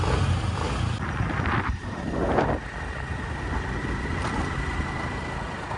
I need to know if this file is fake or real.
fake